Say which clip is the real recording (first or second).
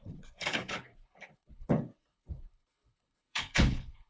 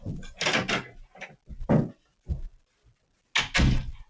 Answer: second